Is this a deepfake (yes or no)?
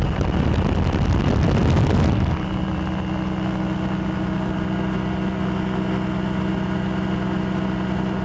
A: no